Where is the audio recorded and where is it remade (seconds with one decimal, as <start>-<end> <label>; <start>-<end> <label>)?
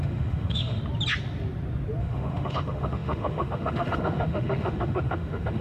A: 0.0-0.8 remade; 0.8-2.0 recorded; 2.0-5.6 remade